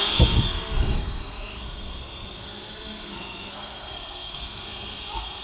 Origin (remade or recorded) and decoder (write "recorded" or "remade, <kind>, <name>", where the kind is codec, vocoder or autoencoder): remade, codec, SNAC